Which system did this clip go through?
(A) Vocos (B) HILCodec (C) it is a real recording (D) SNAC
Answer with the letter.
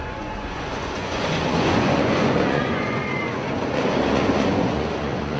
A